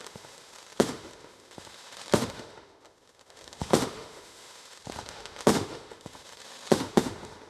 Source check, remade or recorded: remade